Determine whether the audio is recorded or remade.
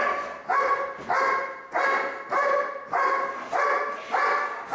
recorded